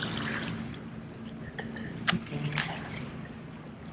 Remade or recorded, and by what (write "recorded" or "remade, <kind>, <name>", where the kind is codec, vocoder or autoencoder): recorded